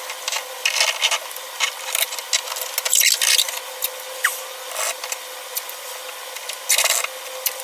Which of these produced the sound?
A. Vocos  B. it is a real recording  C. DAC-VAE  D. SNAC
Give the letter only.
B